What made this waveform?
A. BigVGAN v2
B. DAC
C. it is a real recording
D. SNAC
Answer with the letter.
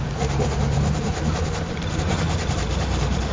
A